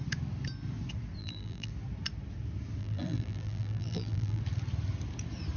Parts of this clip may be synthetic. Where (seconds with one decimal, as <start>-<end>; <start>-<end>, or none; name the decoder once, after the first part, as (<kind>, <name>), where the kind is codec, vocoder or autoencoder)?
1.2-1.7 (vocoder, BigVGAN v2); 2.8-4.4